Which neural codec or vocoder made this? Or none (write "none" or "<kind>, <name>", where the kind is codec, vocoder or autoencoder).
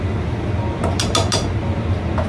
none